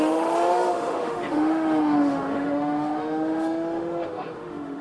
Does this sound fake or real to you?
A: fake